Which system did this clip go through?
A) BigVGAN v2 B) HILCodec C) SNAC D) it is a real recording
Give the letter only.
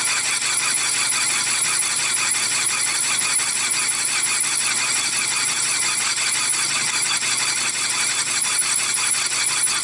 D